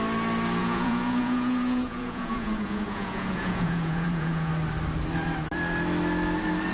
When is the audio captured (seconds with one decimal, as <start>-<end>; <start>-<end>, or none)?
0.0-0.6; 4.5-6.7